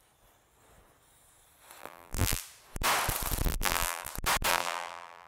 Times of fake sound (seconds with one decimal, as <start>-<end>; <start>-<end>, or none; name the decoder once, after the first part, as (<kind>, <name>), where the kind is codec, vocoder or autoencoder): 1.8-2.4 (vocoder, BigVGAN v2); 3.5-4.1; 4.5-5.3